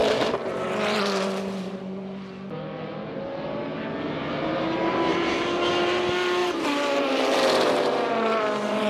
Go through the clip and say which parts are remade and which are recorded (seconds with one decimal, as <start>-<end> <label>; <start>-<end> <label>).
0.0-1.8 remade; 1.8-5.1 recorded; 5.1-5.7 remade; 5.7-6.4 recorded; 6.4-8.4 remade; 8.4-8.9 recorded